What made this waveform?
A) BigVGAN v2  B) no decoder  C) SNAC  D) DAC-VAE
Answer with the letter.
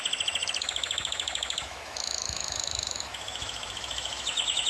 D